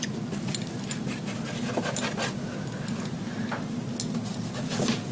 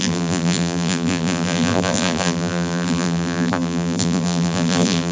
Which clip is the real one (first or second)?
first